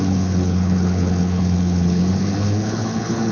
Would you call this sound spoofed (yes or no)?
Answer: yes